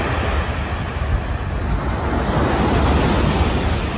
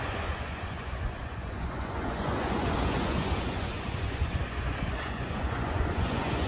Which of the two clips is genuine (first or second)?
first